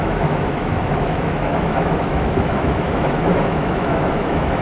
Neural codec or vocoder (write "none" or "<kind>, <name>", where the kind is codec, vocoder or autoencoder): autoencoder, DAC-VAE